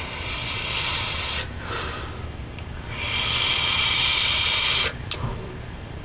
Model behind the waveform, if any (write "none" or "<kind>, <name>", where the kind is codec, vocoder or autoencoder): none